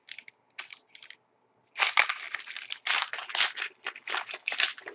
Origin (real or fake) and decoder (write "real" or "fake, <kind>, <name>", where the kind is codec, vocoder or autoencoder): real